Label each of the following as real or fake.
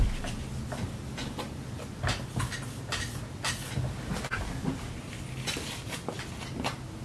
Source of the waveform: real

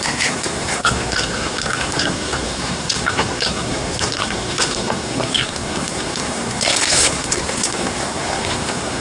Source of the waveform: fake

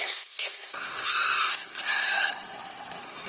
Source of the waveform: fake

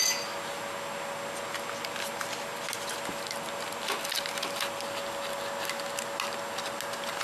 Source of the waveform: real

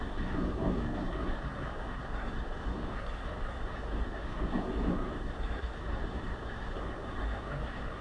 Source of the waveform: fake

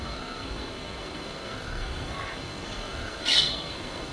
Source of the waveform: fake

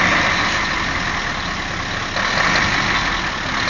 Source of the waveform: real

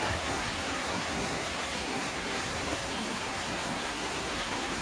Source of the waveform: fake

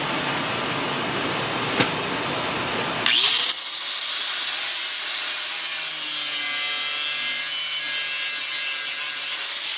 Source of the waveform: real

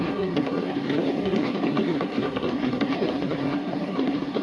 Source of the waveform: fake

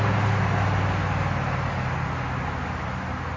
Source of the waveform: real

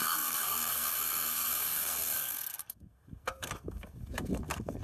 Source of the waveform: fake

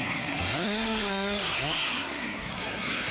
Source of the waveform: fake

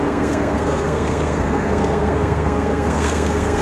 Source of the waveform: fake